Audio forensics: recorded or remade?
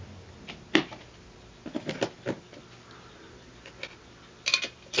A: recorded